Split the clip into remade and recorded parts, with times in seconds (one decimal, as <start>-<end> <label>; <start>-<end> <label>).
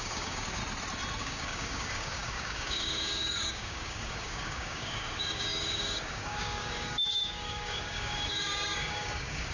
0.0-0.6 remade; 0.6-1.2 recorded; 1.2-9.5 remade